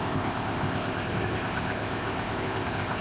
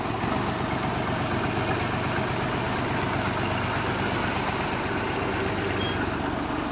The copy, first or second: first